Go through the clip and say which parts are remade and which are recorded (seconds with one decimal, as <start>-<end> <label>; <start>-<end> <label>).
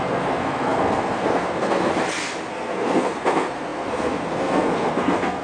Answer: 0.0-1.9 remade; 1.9-2.5 recorded; 2.5-5.4 remade